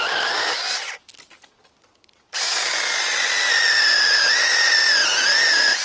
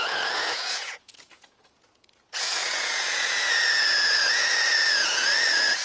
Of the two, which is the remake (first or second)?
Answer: second